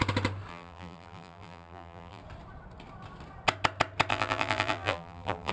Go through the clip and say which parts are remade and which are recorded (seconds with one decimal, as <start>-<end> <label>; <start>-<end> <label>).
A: 0.0-0.5 recorded; 0.5-2.2 remade; 2.2-4.1 recorded; 4.1-5.5 remade

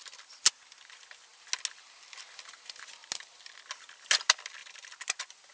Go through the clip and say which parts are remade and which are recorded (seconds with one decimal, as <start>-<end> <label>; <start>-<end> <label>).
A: 0.0-5.5 recorded

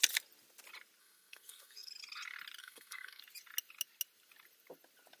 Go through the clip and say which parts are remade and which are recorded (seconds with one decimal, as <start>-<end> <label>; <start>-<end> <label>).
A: 0.0-1.0 recorded; 1.0-1.9 remade; 1.9-2.6 recorded; 2.6-3.2 remade; 3.2-5.2 recorded

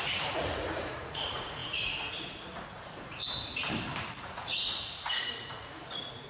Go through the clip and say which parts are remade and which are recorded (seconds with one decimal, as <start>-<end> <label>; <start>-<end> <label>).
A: 0.0-3.2 remade; 3.2-4.0 recorded; 4.0-6.3 remade

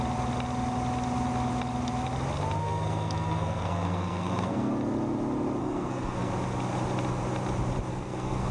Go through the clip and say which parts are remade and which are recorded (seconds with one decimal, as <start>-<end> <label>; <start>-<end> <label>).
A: 0.0-2.6 recorded; 2.6-4.7 remade; 4.7-5.6 recorded; 5.6-6.3 remade; 6.3-7.9 recorded; 7.9-8.5 remade

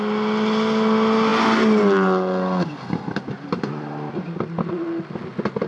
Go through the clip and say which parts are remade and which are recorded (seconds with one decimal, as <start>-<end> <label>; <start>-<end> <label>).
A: 0.0-5.7 recorded

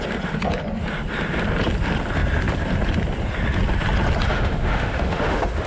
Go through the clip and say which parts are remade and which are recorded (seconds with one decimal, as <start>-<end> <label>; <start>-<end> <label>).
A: 0.0-4.3 recorded; 4.3-5.7 remade